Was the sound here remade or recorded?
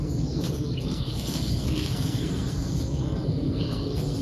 remade